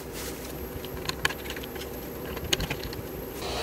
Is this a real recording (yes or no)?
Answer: yes